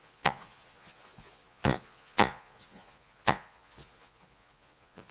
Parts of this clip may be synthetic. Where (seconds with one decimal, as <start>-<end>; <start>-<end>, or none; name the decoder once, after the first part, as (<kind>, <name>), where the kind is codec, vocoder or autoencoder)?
0.0-5.1 (vocoder, Vocos)